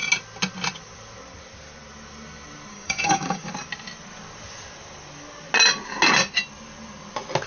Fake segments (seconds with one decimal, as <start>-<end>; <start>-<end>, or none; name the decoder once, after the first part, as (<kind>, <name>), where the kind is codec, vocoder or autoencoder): 2.7-3.5 (codec, DAC)